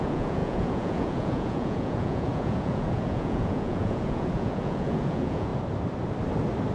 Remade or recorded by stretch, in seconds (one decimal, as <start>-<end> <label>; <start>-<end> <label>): 0.0-5.5 remade; 5.5-6.7 recorded